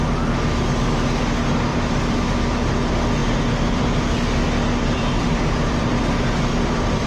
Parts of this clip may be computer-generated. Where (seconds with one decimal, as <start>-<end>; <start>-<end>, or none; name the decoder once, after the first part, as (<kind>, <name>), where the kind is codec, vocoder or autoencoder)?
1.7-2.7 (vocoder, BigVGAN v2); 3.2-7.1